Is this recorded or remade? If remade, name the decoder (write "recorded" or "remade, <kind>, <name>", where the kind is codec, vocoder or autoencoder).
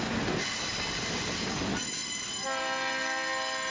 recorded